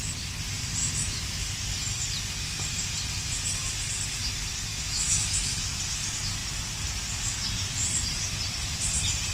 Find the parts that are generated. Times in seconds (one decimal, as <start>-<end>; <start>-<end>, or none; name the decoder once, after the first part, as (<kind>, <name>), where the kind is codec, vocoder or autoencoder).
0.8-1.4 (autoencoder, DAC-VAE); 4.7-5.8